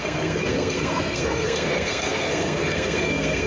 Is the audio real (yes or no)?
no